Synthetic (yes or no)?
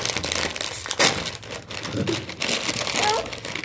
no